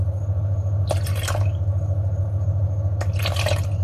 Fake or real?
real